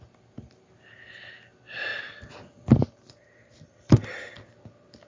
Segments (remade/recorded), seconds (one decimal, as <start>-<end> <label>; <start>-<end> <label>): 0.0-5.1 recorded